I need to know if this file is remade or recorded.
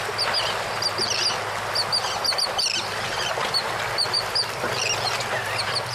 recorded